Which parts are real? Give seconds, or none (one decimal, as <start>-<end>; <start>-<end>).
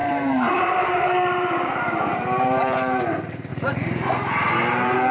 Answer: 3.0-3.5; 4.1-5.1